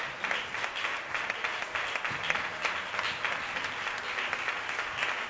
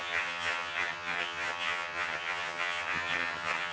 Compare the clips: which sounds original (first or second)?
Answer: first